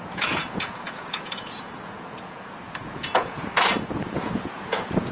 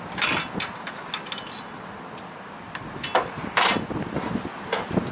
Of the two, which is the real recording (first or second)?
second